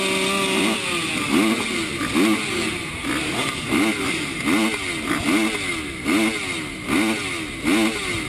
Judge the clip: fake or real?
real